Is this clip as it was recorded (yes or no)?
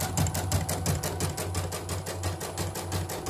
yes